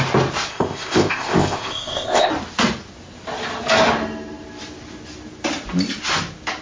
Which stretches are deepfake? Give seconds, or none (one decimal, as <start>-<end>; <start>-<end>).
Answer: 0.5-2.3

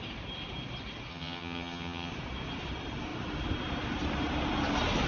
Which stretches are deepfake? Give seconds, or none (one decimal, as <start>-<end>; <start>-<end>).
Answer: 1.1-2.1

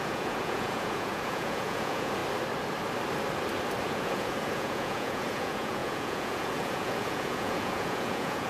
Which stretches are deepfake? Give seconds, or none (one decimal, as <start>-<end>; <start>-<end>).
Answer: 0.0-2.2; 3.8-8.5

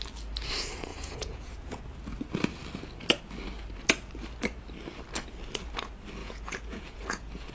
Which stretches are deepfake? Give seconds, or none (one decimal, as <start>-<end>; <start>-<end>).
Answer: 0.9-1.8; 6.2-7.5

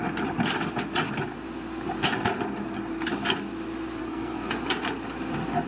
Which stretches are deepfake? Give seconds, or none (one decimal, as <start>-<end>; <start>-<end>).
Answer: 4.0-4.5